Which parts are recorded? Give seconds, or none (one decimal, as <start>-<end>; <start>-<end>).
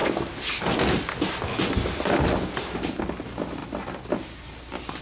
0.0-5.0